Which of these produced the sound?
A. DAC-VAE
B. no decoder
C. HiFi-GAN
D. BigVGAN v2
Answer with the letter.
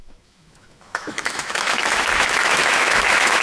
A